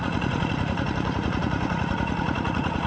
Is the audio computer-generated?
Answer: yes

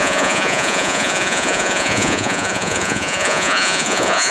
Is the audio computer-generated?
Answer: yes